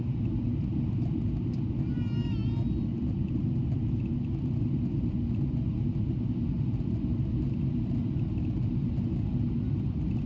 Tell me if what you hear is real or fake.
real